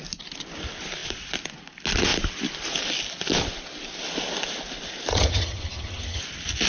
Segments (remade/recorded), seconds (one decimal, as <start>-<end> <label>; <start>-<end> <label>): 0.0-5.1 recorded; 5.1-6.2 remade; 6.2-6.7 recorded